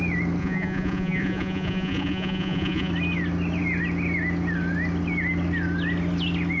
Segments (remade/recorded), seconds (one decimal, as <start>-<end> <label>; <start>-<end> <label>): 0.0-0.4 recorded; 0.4-2.9 remade; 2.9-6.6 recorded